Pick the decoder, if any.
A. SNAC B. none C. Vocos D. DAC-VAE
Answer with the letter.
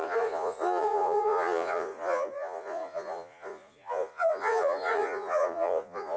C